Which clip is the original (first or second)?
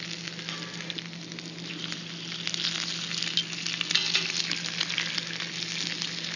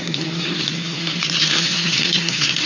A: first